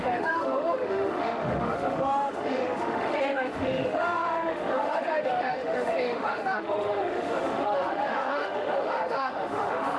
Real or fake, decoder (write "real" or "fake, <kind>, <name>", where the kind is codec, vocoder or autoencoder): fake, autoencoder, DAC-VAE